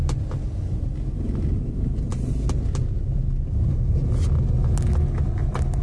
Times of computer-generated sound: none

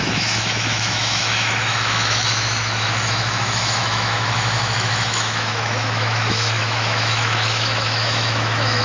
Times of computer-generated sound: 0.0-8.8 (autoencoder, DAC-VAE)

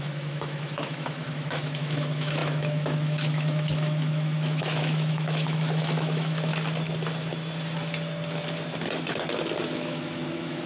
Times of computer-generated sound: 0.0-6.5 (autoencoder, DAC-VAE); 9.6-10.7

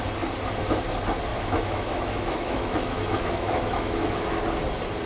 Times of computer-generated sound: 1.3-4.4 (autoencoder, DAC-VAE)

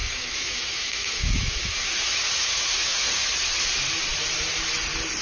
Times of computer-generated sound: 0.0-3.1 (autoencoder, DAC-VAE)

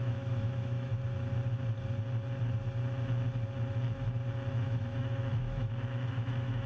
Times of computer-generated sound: 0.0-0.9 (autoencoder, DAC-VAE); 4.5-6.7

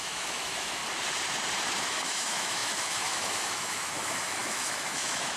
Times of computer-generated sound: 0.0-0.8 (autoencoder, DAC-VAE); 1.8-5.4

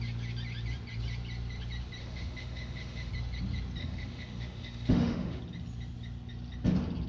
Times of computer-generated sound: 2.0-3.1 (autoencoder, DAC-VAE); 3.8-5.4